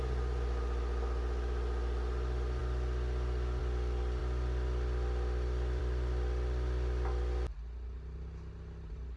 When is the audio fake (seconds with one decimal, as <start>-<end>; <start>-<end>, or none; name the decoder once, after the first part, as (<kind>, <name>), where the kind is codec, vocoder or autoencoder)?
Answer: none